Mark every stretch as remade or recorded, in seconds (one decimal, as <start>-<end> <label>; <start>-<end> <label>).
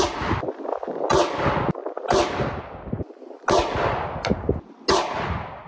0.0-5.7 recorded